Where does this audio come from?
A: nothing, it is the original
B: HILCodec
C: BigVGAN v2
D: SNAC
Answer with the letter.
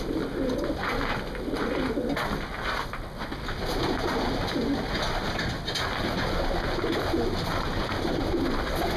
A